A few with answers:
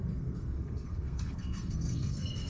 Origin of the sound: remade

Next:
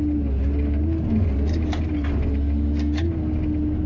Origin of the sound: recorded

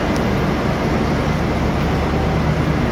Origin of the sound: recorded